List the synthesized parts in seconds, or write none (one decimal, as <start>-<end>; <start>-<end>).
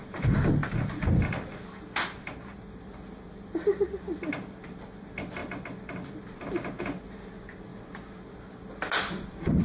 none